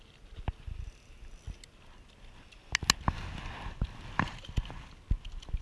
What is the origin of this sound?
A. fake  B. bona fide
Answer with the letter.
B